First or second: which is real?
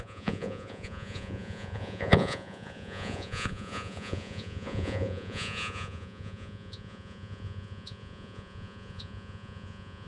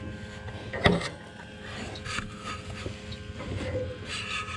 second